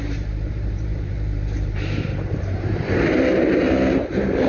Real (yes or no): no